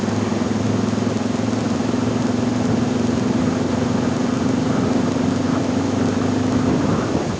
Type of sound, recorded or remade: recorded